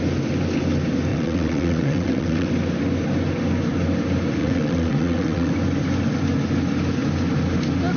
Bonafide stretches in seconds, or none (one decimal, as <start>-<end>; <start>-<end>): 0.0-1.1; 2.5-4.4; 5.5-8.0